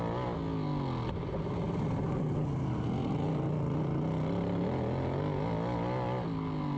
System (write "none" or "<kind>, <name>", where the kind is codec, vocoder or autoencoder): none